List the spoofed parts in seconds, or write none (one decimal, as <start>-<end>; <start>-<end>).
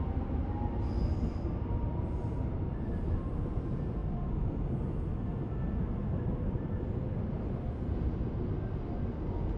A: none